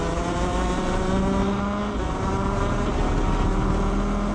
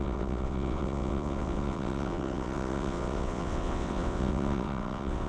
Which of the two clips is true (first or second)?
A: first